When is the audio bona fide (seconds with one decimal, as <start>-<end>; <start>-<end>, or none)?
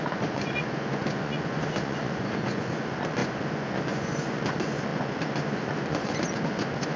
none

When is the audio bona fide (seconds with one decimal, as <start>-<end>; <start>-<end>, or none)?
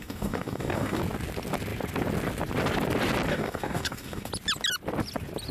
1.0-3.3; 4.3-5.5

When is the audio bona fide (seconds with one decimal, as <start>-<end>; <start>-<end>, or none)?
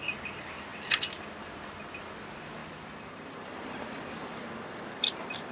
0.0-0.7; 1.5-2.6